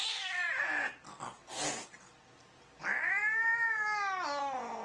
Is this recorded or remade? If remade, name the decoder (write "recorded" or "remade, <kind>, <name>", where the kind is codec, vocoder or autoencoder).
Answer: recorded